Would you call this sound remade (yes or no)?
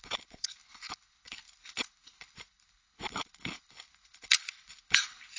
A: yes